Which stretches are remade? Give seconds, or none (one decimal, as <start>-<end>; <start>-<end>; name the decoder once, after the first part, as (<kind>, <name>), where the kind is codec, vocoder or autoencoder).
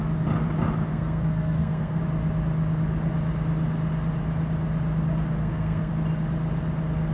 0.9-2.0 (codec, SNAC); 5.4-5.9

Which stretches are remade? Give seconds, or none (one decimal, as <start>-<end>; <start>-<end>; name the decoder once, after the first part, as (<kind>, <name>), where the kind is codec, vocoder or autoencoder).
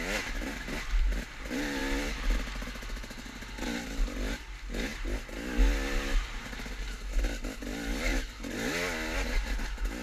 none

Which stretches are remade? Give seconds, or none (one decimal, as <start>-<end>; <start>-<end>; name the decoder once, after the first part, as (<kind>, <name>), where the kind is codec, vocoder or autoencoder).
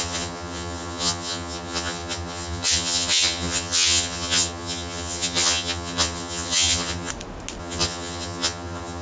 0.0-7.1 (vocoder, HiFi-GAN); 7.6-9.0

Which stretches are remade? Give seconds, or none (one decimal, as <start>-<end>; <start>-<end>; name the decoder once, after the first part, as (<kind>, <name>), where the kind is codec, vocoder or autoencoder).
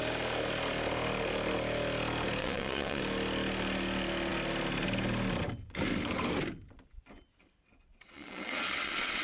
2.4-3.0 (vocoder, WaveNeXt); 7.9-9.2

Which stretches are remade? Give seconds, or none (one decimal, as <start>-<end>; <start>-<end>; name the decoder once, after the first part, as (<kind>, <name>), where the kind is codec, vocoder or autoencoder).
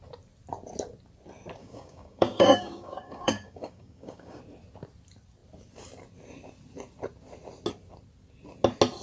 1.6-4.4 (codec, DAC)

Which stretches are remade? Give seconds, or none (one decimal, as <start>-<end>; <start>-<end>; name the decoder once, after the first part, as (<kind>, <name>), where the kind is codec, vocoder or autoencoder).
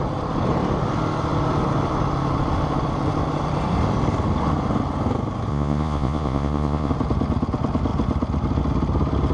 5.5-6.9 (vocoder, Vocos)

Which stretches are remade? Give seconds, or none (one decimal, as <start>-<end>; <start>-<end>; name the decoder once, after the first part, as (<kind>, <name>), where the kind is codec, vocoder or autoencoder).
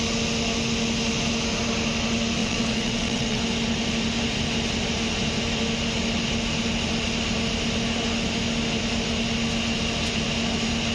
2.4-3.4 (vocoder, WaveNeXt)